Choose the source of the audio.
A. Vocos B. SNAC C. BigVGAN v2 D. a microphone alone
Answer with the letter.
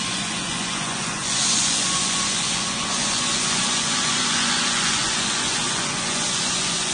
A